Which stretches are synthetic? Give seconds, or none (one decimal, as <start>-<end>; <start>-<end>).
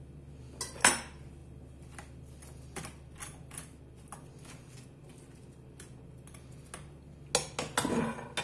none